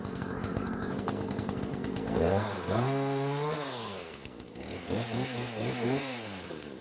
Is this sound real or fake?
fake